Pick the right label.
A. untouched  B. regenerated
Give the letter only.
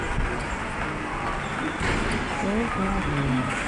A